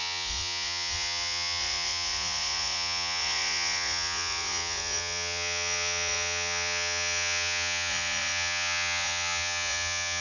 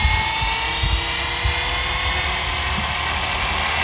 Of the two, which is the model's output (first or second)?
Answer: first